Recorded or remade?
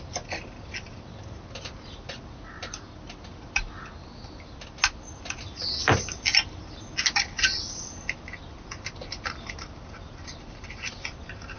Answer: recorded